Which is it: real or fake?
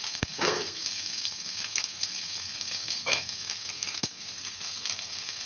fake